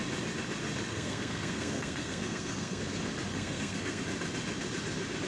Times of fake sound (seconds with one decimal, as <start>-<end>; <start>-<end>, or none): 0.9-2.8; 3.3-4.0